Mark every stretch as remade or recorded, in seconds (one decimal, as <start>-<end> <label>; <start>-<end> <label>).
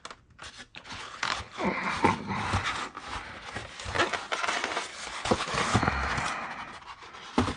0.0-0.7 recorded; 0.7-1.6 remade; 1.6-4.9 recorded; 4.9-5.5 remade; 5.5-7.6 recorded